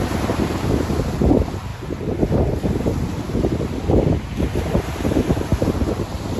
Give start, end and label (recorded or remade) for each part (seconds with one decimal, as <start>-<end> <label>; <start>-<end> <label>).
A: 0.0-1.7 remade; 1.7-4.8 recorded; 4.8-6.4 remade